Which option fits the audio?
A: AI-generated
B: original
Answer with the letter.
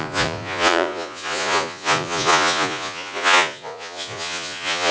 A